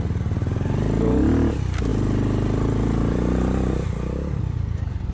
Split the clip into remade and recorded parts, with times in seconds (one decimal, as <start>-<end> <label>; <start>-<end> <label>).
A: 0.0-5.1 recorded

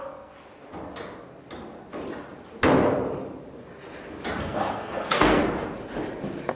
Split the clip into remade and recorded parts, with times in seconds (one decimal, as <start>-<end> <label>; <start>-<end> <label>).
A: 0.0-0.4 remade; 0.4-4.4 recorded; 4.4-5.4 remade; 5.4-6.6 recorded

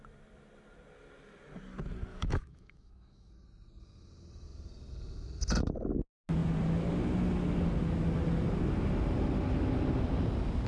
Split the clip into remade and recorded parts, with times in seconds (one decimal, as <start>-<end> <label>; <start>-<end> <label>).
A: 0.0-2.1 recorded; 2.1-3.3 remade; 3.3-10.7 recorded

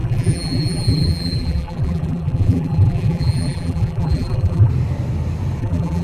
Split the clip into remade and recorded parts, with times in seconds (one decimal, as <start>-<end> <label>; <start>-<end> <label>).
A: 0.0-4.7 remade; 4.7-5.6 recorded; 5.6-6.0 remade

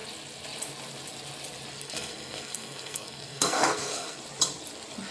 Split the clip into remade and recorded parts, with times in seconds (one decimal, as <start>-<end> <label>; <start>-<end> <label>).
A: 0.0-1.7 recorded; 1.7-4.2 remade; 4.2-5.1 recorded

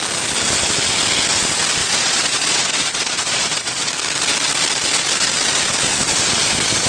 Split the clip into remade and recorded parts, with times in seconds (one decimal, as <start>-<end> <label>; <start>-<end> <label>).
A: 0.0-1.8 recorded; 1.8-3.9 remade; 3.9-6.9 recorded

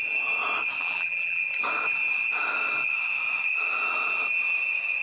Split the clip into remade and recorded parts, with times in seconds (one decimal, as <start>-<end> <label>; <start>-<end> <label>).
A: 0.0-0.8 recorded; 0.8-1.4 remade; 1.4-5.0 recorded

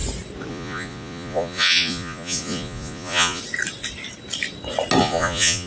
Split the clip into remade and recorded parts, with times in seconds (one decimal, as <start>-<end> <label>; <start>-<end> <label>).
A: 0.0-0.5 recorded; 0.5-3.4 remade; 3.4-5.0 recorded; 5.0-5.7 remade